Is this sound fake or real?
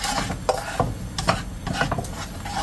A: real